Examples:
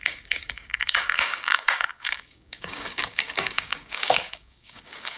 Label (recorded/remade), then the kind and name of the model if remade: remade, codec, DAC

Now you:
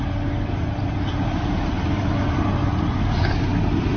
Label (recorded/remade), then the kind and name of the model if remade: recorded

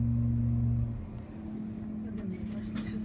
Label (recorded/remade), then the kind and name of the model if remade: recorded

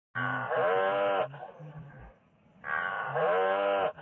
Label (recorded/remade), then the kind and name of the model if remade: recorded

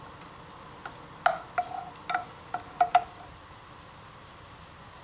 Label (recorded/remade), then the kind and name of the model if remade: recorded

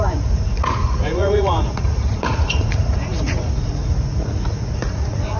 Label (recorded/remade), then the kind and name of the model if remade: remade, vocoder, Vocos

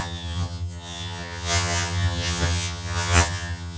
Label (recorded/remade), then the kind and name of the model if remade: remade, vocoder, HiFi-GAN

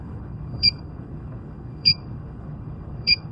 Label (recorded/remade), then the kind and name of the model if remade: remade, codec, HILCodec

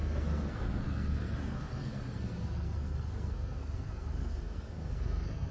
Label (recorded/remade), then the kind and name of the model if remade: remade, codec, SNAC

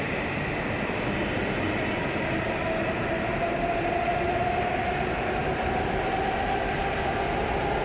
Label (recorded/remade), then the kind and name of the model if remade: recorded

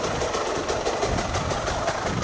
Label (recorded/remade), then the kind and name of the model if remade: recorded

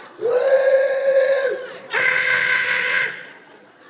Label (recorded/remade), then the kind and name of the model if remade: remade, vocoder, Vocos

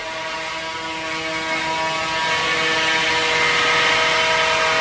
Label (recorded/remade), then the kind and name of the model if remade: recorded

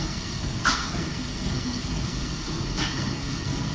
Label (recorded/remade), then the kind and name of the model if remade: remade, codec, SNAC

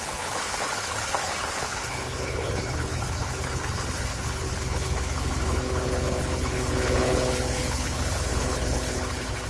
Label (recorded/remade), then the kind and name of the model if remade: remade, codec, HILCodec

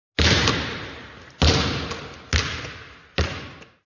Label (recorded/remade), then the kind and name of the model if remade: recorded